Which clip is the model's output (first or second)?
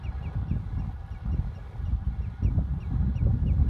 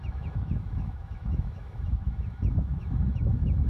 second